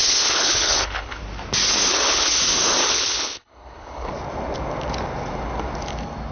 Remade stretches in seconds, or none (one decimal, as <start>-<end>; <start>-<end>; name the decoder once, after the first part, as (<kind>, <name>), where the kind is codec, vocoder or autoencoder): 0.0-1.2 (codec, HILCodec); 1.9-2.4; 2.8-4.1